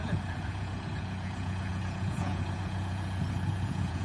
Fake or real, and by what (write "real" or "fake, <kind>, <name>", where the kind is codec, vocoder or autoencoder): fake, vocoder, Vocos